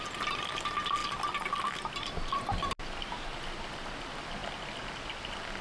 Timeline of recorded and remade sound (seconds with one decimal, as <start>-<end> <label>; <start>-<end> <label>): 0.0-5.6 recorded